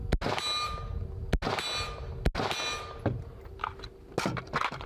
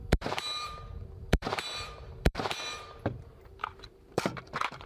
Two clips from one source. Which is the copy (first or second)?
second